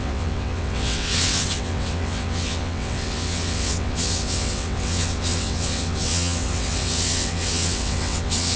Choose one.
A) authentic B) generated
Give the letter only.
B